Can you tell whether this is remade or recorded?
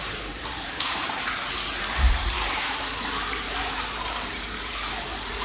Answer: remade